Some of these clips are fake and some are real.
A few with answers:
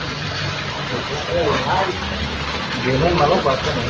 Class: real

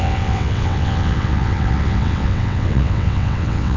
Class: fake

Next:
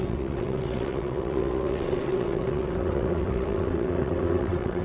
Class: fake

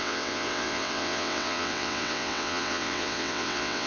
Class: fake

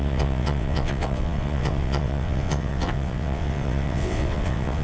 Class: fake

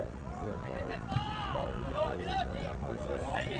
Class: fake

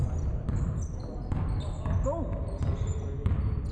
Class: real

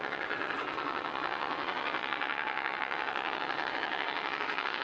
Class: fake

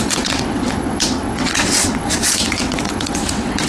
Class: fake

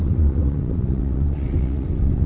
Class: fake